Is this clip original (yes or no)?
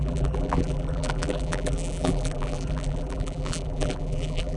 no